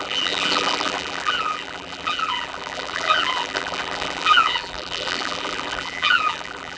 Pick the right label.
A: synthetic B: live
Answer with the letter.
A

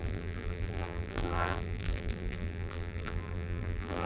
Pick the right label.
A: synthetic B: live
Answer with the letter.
A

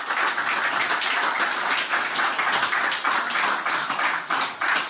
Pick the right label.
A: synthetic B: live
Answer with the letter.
B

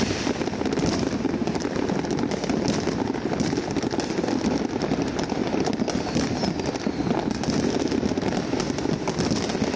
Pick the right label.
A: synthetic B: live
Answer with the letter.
B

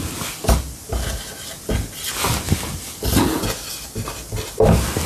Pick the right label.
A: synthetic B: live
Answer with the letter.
B